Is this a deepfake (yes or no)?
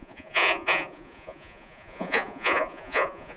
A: yes